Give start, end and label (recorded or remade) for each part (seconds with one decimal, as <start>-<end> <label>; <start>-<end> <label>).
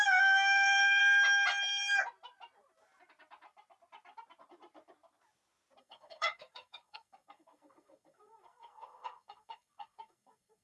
0.0-1.0 remade; 1.0-5.8 recorded; 5.8-10.6 remade